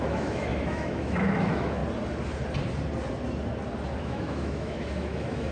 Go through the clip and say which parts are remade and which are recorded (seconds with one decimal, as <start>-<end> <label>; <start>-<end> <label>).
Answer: 0.0-1.8 remade; 1.8-4.0 recorded; 4.0-5.5 remade